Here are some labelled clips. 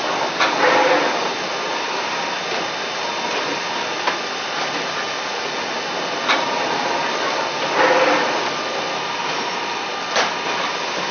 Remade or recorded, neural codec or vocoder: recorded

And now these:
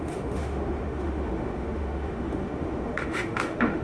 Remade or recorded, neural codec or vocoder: remade, autoencoder, DAC-VAE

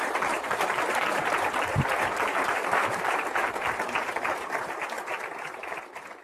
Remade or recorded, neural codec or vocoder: remade, vocoder, BigVGAN v2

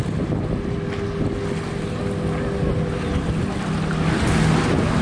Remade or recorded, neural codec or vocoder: recorded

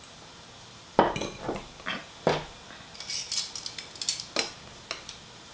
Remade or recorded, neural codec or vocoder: recorded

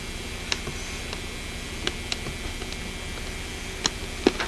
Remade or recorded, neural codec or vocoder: recorded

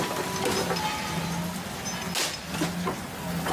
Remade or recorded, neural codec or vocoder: recorded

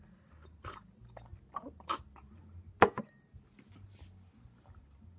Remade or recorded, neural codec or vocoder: recorded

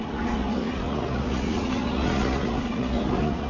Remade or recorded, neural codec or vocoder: remade, vocoder, Vocos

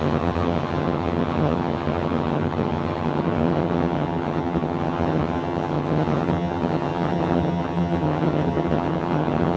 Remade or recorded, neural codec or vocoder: remade, vocoder, HiFi-GAN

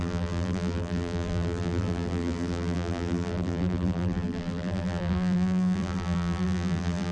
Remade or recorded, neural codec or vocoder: remade, vocoder, BigVGAN v2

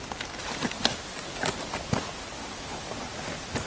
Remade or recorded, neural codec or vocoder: recorded